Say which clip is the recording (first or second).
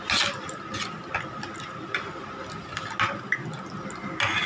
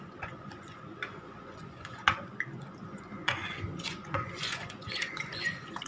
first